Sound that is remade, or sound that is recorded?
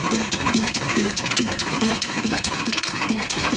remade